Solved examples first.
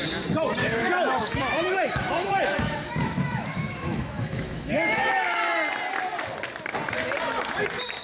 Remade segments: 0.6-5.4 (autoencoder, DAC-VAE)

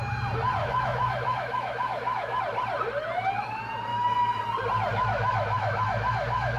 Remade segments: 0.6-2.4 (autoencoder, DAC-VAE); 3.9-4.4; 4.9-6.6

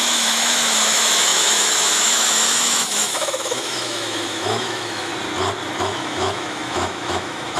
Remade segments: 0.0-5.1 (autoencoder, DAC-VAE); 5.8-7.6

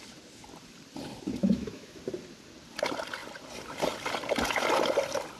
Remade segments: 1.4-2.0 (autoencoder, DAC-VAE)